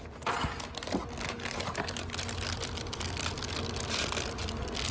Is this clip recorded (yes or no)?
yes